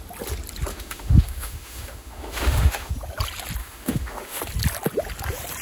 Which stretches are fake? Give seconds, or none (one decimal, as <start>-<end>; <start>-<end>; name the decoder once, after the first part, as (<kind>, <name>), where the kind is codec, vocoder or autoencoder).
0.7-2.9 (autoencoder, DAC-VAE); 3.6-4.4